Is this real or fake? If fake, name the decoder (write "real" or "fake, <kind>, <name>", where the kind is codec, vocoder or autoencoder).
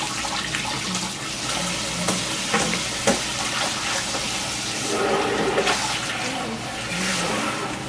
real